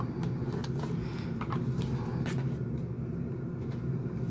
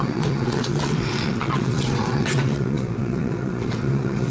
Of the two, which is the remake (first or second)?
second